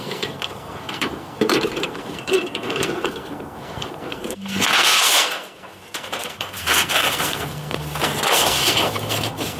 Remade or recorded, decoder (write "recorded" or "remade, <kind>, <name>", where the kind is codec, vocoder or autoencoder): remade, codec, SNAC